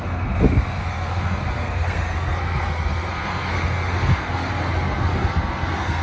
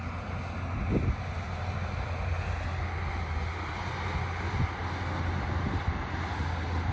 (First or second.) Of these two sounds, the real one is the second